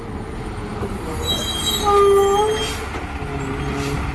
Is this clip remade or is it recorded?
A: recorded